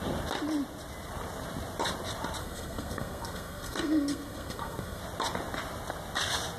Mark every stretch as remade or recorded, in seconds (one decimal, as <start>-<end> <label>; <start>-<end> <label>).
0.0-2.4 recorded; 2.4-5.0 remade; 5.0-6.6 recorded